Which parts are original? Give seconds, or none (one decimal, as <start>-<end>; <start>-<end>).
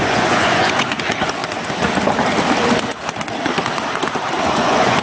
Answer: 1.4-4.4